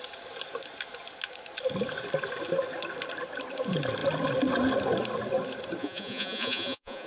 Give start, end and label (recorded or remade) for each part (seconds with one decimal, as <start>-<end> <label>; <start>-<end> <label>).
0.0-5.8 recorded; 5.8-7.1 remade